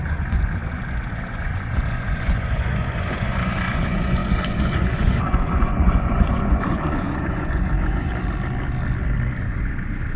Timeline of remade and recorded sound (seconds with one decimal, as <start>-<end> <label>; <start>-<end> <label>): 0.0-8.1 remade; 8.1-9.3 recorded; 9.3-10.2 remade